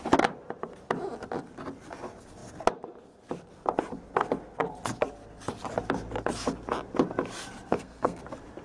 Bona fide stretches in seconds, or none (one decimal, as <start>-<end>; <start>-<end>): 0.0-7.7; 8.2-8.6